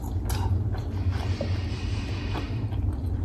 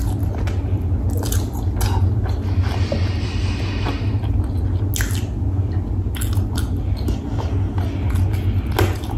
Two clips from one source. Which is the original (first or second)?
second